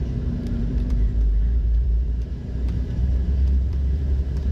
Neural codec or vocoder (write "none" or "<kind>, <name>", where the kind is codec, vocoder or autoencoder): vocoder, BigVGAN v2